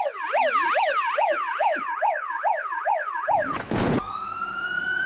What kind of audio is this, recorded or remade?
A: remade